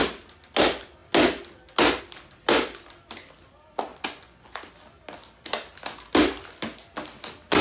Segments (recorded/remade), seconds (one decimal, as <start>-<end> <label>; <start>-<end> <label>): 0.0-3.9 recorded; 3.9-4.5 remade; 4.5-7.6 recorded